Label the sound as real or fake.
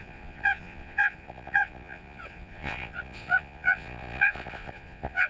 fake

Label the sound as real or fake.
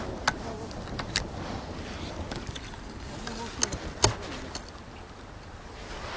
real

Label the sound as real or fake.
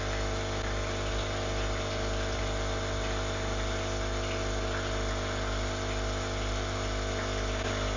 real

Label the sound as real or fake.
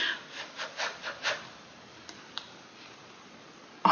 real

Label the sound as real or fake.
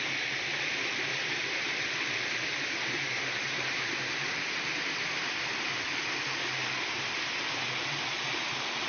real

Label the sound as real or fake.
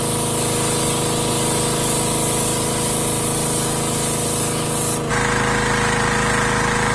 real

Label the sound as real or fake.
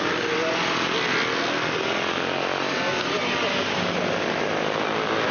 real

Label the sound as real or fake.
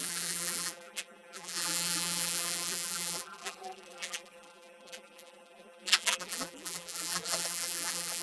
fake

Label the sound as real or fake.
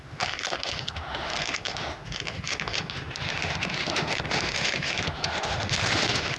fake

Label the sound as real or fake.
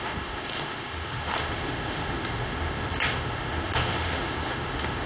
fake